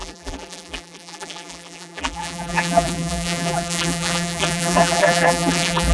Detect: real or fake fake